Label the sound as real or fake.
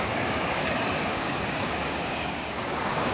fake